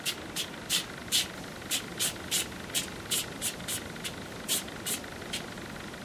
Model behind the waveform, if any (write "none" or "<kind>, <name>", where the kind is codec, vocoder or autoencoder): none